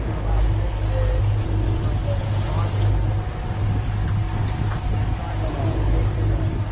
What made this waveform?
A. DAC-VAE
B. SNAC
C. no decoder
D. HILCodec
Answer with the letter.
C